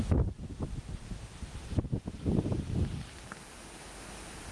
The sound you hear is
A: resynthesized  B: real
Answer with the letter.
B